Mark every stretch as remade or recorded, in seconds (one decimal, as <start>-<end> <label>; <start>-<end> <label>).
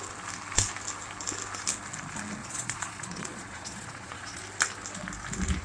0.0-2.4 recorded; 2.4-4.4 remade; 4.4-5.6 recorded